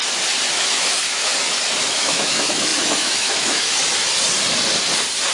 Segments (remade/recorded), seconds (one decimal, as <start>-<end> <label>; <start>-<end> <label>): 0.0-0.5 recorded; 0.5-1.3 remade; 1.3-1.9 recorded; 1.9-3.8 remade; 3.8-5.3 recorded